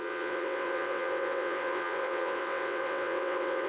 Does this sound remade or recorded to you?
remade